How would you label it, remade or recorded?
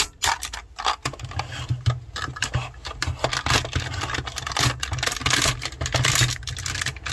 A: recorded